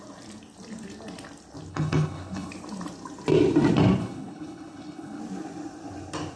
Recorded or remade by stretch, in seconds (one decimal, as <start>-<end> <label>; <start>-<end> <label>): 0.0-1.7 recorded; 1.7-2.5 remade; 2.5-4.0 recorded; 4.0-5.2 remade; 5.2-6.4 recorded